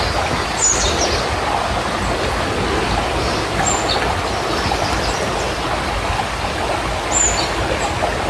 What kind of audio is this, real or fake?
real